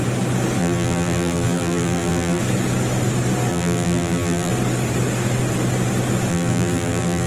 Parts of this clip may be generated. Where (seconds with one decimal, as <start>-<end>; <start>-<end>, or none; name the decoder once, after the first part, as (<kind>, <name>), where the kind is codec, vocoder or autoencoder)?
0.6-2.4 (vocoder, BigVGAN v2); 3.5-4.5; 6.3-7.3